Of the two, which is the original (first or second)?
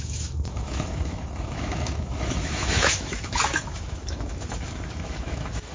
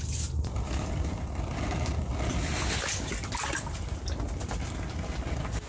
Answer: second